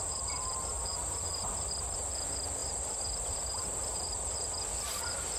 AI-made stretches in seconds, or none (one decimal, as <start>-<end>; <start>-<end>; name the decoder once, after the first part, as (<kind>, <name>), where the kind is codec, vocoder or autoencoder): 0.0-1.7 (vocoder, BigVGAN v2)